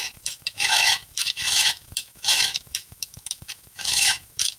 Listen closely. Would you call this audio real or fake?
fake